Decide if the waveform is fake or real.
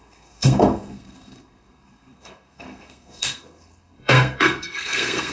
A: fake